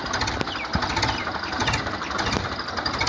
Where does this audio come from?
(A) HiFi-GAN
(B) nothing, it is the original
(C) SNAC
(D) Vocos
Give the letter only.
B